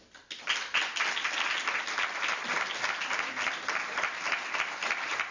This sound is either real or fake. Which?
real